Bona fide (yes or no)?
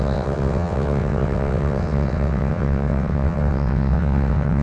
no